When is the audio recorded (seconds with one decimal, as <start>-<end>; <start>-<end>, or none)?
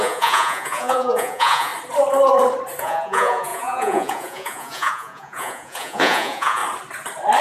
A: 1.7-2.8; 6.6-7.4